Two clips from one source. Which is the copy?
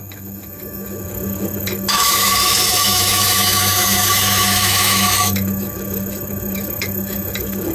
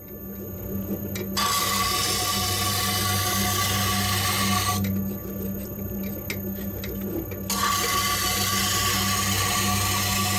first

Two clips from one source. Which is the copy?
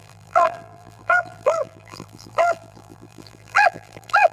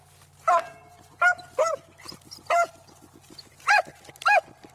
first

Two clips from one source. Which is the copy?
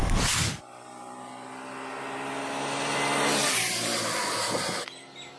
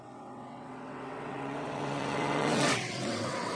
second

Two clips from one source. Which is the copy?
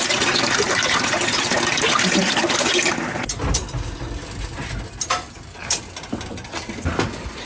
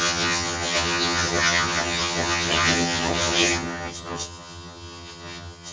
second